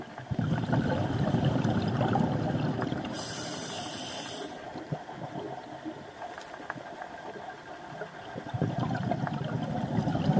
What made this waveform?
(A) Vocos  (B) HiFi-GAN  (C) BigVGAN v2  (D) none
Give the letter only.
C